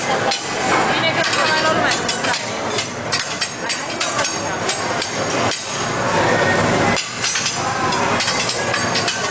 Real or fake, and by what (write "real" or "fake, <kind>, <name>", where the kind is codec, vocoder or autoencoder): real